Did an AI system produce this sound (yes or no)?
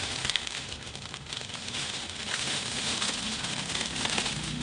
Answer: yes